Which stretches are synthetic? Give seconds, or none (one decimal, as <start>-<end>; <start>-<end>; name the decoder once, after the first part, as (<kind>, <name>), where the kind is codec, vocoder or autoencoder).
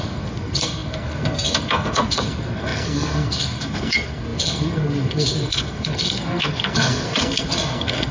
0.0-8.1 (codec, SNAC)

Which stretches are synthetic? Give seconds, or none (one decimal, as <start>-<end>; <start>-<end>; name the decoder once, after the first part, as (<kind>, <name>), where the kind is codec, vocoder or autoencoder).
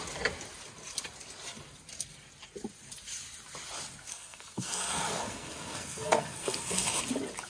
4.1-7.0 (codec, SNAC)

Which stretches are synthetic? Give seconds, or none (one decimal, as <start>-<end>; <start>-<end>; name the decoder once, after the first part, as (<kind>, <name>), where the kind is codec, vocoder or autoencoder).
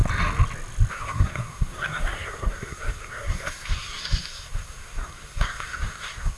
0.9-6.4 (codec, SNAC)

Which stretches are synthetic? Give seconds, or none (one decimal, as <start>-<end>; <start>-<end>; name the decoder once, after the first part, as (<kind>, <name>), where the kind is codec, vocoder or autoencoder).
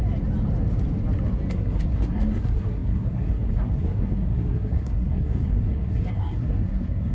1.5-7.1 (codec, SNAC)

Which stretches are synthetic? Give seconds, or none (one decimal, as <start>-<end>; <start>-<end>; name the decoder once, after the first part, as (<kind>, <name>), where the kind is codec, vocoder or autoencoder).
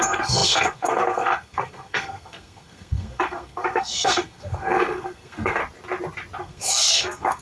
0.0-5.6 (codec, SNAC); 6.4-7.4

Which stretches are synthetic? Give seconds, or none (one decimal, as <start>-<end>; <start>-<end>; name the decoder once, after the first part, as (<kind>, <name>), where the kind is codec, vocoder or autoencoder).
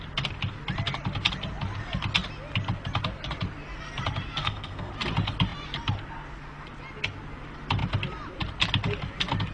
4.4-4.9 (codec, SNAC)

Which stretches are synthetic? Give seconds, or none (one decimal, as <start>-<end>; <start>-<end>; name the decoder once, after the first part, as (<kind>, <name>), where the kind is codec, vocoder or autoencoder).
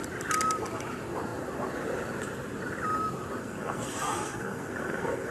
3.4-5.3 (codec, SNAC)